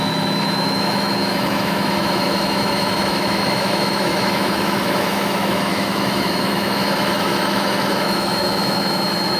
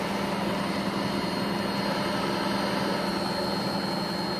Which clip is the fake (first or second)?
first